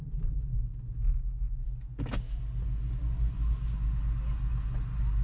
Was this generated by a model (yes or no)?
no